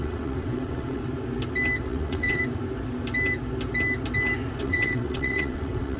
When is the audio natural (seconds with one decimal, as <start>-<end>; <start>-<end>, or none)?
1.0-1.8; 2.4-4.6